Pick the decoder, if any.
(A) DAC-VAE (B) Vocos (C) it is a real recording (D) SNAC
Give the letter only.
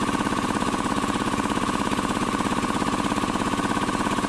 B